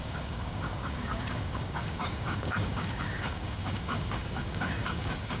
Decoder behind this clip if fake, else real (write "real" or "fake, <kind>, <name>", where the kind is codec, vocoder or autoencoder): fake, codec, DAC